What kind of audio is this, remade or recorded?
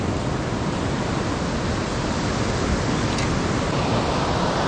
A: recorded